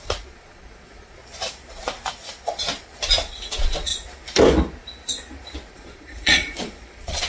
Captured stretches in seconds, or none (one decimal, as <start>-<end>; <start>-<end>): 1.2-3.5; 3.9-5.7